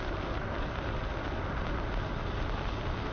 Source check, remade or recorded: recorded